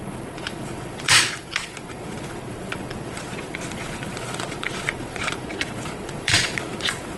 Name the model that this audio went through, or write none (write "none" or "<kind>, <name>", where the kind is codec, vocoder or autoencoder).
vocoder, Vocos